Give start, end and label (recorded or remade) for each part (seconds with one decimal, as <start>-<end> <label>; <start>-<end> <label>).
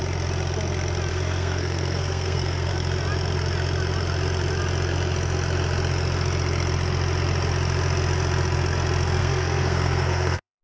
0.0-1.1 recorded; 1.1-2.7 remade; 2.7-9.2 recorded; 9.2-10.6 remade